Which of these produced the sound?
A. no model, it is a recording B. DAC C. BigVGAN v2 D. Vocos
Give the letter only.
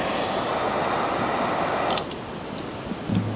A